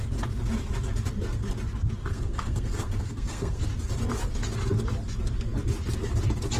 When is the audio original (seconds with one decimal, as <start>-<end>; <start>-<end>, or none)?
0.0-2.1; 3.6-6.6